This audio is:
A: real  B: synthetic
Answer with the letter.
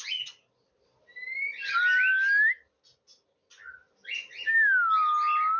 A